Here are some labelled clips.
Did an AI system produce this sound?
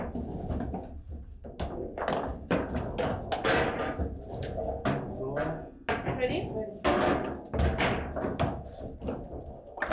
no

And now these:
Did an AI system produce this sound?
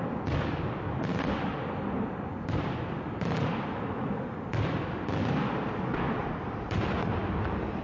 no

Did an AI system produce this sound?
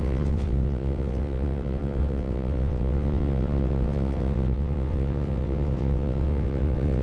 yes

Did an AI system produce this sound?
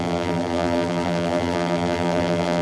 yes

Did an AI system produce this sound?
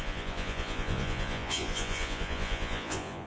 yes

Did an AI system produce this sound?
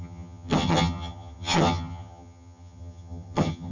yes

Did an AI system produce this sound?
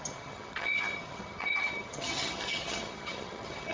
yes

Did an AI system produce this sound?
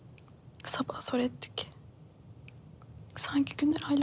no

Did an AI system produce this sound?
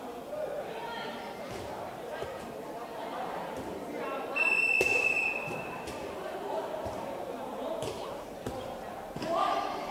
yes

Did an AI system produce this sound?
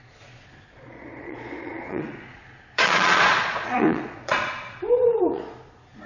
yes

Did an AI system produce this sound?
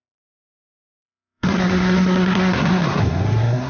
yes